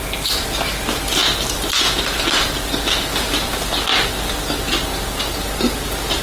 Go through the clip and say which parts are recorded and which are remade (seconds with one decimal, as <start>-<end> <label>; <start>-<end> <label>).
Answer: 0.0-6.2 recorded